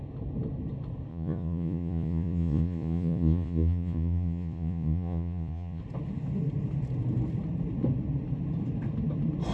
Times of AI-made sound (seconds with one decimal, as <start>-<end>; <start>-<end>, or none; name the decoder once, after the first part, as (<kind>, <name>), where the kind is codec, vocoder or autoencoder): 1.1-5.8 (vocoder, Vocos)